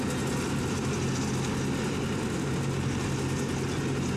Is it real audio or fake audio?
real